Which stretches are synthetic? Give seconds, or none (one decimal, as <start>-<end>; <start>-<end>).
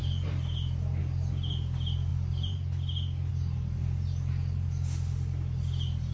none